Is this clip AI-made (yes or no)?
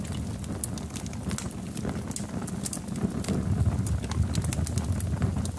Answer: no